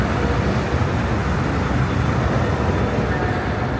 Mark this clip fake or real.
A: real